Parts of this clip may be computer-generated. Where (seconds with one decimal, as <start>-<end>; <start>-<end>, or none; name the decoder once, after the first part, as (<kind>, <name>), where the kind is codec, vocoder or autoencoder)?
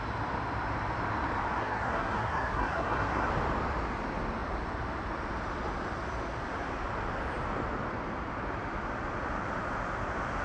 1.6-3.3 (codec, SNAC)